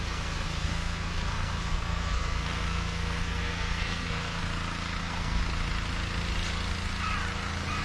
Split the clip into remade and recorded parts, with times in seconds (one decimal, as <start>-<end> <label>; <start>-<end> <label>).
0.0-4.4 remade; 4.4-5.0 recorded; 5.0-5.4 remade; 5.4-7.8 recorded